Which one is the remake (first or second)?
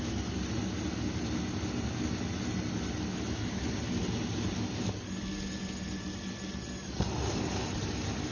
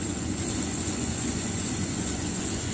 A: second